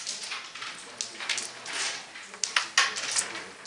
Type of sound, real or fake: real